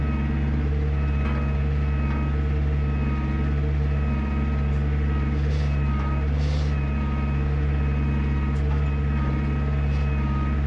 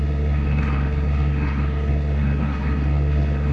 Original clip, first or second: first